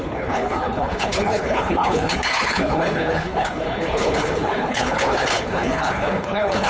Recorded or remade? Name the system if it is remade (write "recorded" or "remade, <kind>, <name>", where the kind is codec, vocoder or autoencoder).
remade, codec, HILCodec